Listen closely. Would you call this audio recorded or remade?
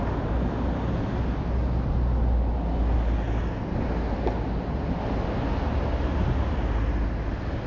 recorded